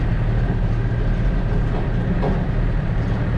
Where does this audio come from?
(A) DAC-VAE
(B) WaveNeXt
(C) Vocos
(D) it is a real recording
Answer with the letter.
D